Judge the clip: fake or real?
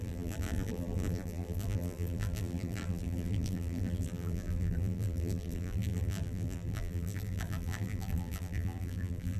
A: fake